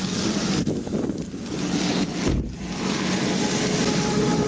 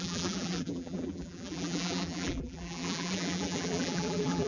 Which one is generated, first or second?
second